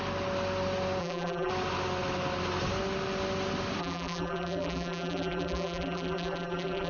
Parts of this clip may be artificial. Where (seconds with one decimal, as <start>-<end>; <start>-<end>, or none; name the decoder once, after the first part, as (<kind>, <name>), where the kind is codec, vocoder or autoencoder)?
1.0-1.5 (vocoder, BigVGAN v2); 3.8-6.9